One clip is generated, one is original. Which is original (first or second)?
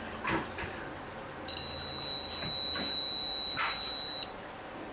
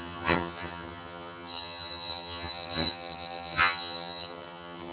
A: first